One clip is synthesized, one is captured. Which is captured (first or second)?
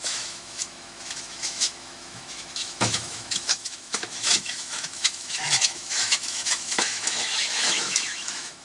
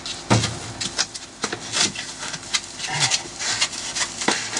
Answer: second